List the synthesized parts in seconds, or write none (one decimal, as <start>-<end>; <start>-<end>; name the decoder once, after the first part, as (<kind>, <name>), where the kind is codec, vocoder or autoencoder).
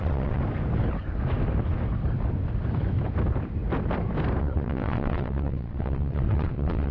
0.0-0.4 (vocoder, WaveNeXt); 4.4-6.9